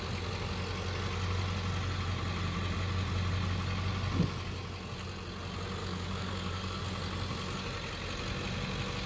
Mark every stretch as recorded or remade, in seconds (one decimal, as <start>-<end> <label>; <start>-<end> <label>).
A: 0.0-5.8 recorded; 5.8-6.8 remade; 6.8-9.1 recorded